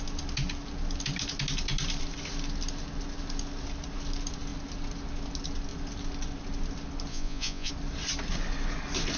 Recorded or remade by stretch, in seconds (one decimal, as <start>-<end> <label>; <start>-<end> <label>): 0.0-7.1 recorded; 7.1-7.7 remade; 7.7-9.2 recorded